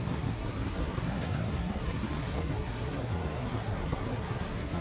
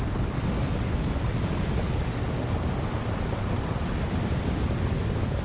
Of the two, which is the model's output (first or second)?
first